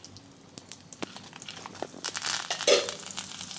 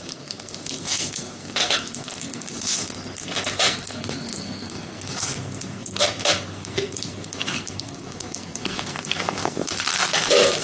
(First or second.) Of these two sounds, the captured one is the first